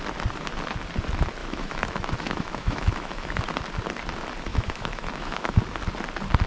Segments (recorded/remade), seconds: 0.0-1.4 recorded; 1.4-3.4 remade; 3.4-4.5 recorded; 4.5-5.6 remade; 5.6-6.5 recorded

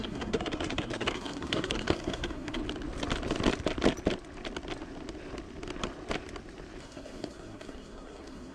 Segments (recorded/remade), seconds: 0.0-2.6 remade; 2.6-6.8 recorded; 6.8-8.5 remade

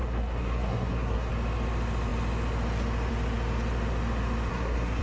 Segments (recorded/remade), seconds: 0.0-1.3 remade; 1.3-4.5 recorded; 4.5-5.0 remade

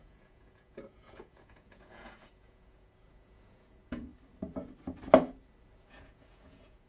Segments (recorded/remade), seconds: 0.0-4.1 remade; 4.1-5.8 recorded; 5.8-6.9 remade

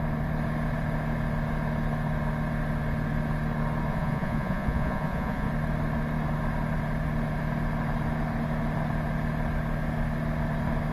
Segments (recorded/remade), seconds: 0.0-3.9 recorded; 3.9-5.5 remade; 5.5-10.9 recorded

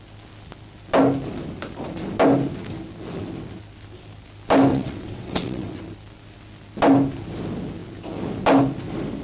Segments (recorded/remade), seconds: 0.0-4.7 recorded; 4.7-5.8 remade; 5.8-9.2 recorded

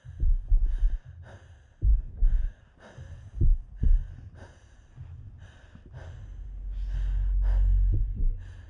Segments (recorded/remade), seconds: 0.0-1.9 recorded; 1.9-2.6 remade; 2.6-8.7 recorded